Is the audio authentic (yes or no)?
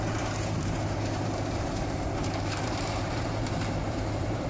no